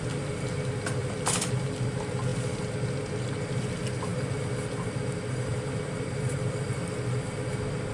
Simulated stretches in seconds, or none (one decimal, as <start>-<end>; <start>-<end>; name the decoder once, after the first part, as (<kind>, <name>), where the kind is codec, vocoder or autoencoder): 1.0-1.5 (vocoder, BigVGAN v2); 5.5-6.8